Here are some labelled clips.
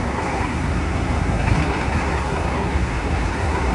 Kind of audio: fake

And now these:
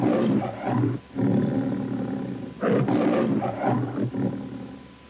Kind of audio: real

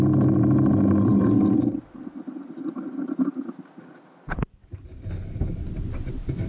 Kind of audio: real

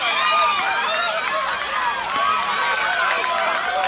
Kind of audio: real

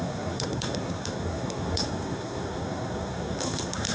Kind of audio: fake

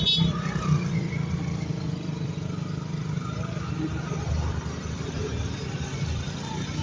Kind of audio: real